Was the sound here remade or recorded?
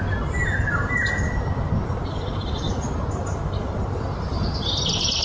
recorded